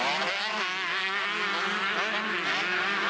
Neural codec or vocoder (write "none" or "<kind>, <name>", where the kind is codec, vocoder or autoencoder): none